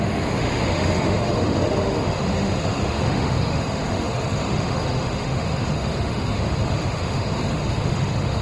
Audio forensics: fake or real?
fake